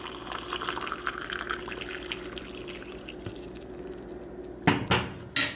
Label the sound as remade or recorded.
recorded